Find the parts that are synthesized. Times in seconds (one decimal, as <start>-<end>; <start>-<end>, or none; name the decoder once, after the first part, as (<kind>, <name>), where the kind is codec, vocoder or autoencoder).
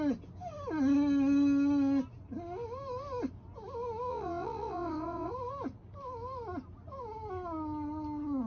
4.1-5.3 (vocoder, WaveNeXt)